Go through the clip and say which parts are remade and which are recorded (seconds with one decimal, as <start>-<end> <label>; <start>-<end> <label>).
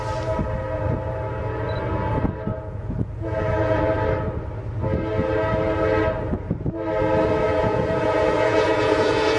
0.0-2.5 recorded; 2.5-3.8 remade; 3.8-7.5 recorded; 7.5-9.4 remade